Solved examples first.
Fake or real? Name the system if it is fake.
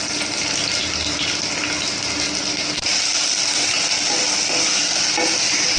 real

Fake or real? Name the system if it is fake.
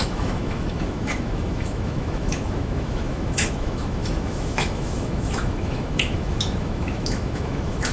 fake, autoencoder, DAC-VAE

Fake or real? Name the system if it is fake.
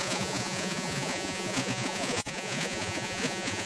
fake, vocoder, Vocos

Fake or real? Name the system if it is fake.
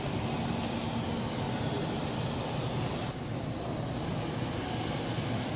real